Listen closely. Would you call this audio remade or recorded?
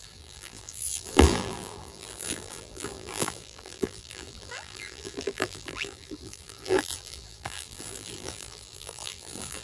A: remade